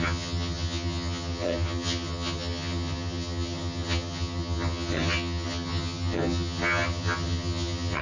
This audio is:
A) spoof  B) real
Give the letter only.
A